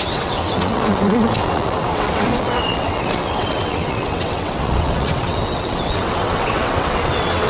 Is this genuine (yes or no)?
no